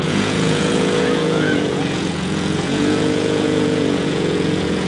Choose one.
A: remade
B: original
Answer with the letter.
A